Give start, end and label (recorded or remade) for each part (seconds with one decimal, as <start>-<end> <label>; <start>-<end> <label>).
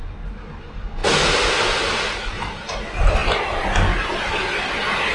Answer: 0.0-5.1 recorded